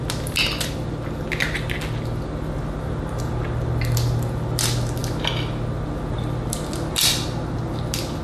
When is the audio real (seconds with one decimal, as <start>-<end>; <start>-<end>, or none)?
0.0-8.2